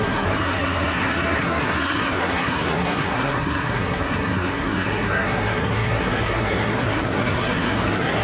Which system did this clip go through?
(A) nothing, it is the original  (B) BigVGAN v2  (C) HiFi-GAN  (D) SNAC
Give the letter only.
D